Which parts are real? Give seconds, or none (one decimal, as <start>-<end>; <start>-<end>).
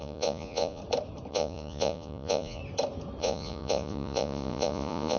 0.8-1.3; 2.6-3.2